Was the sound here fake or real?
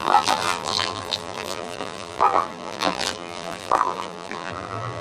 fake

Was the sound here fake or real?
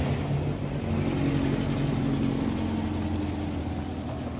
real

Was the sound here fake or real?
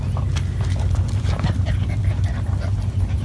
real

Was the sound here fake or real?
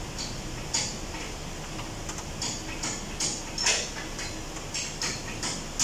real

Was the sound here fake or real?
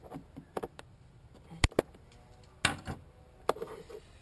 real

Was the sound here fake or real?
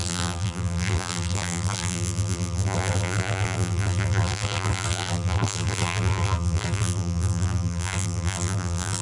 fake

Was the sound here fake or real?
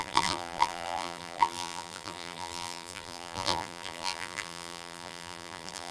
fake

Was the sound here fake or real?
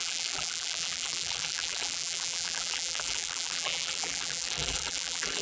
fake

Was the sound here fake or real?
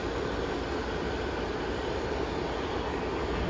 real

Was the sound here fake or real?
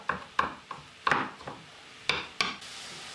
real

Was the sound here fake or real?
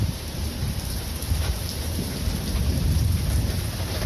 fake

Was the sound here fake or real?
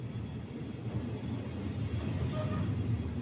real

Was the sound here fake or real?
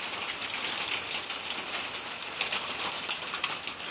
real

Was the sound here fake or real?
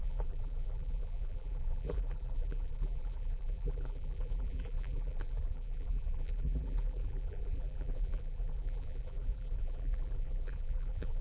fake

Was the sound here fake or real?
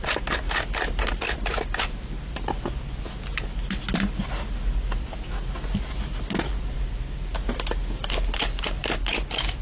real